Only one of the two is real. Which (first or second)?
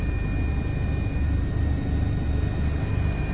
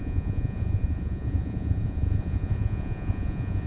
first